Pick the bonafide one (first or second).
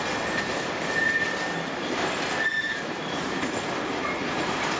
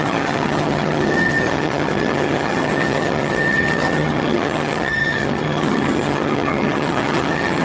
first